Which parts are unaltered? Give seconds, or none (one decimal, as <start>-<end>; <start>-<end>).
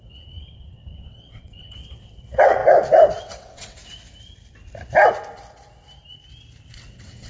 2.6-3.2; 3.8-6.7